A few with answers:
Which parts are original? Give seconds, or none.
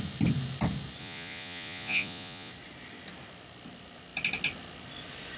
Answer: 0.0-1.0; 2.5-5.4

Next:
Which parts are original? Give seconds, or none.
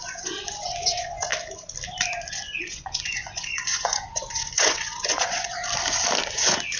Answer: 1.3-2.3; 5.6-6.3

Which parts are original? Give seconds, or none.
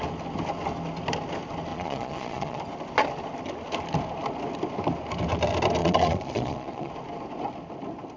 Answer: 0.0-1.7; 2.6-5.8; 6.9-8.2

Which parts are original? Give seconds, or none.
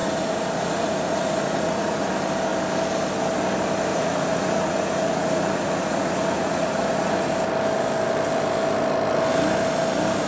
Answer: 2.1-3.9; 7.3-10.3